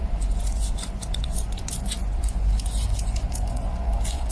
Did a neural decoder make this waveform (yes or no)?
yes